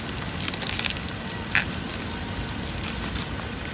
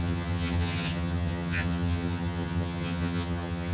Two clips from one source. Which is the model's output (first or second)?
second